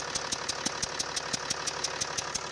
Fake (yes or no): no